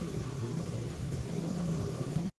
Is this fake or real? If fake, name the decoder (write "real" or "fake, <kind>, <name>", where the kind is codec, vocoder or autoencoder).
fake, codec, SNAC